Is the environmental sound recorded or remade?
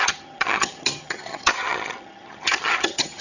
remade